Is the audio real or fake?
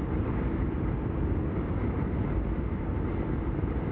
real